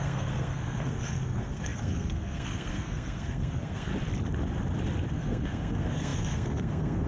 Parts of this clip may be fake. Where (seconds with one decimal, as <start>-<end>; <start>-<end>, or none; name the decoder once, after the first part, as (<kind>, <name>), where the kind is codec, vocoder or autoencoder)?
0.0-3.9 (codec, SNAC); 5.1-7.1